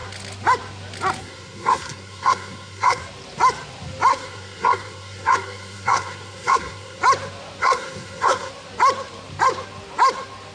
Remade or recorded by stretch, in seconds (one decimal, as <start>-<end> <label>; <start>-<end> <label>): 0.0-1.2 recorded; 1.2-3.0 remade; 3.0-4.1 recorded; 4.1-7.0 remade; 7.0-7.6 recorded; 7.6-8.5 remade; 8.5-10.5 recorded